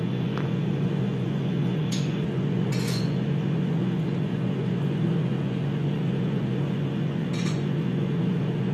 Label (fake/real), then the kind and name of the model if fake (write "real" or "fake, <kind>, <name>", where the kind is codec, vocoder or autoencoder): fake, vocoder, Vocos